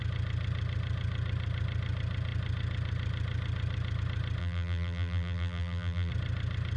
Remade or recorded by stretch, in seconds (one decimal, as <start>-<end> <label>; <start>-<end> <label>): 0.0-4.4 recorded; 4.4-6.1 remade; 6.1-6.8 recorded